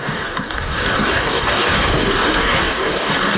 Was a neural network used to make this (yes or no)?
yes